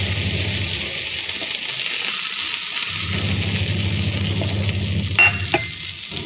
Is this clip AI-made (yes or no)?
no